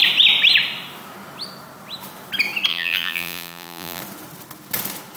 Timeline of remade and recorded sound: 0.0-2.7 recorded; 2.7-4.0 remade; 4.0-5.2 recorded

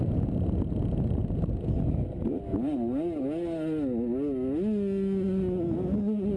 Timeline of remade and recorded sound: 0.0-6.4 recorded

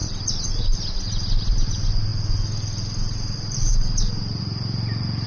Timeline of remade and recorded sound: 0.0-5.3 recorded